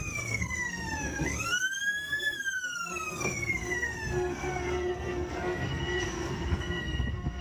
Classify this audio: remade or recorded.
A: remade